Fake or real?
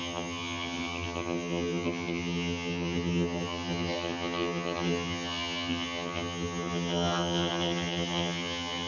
fake